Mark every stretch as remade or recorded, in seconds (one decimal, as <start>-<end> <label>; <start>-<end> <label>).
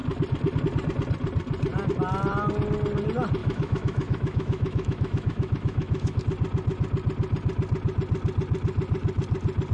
0.0-3.4 recorded; 3.4-6.2 remade; 6.2-9.7 recorded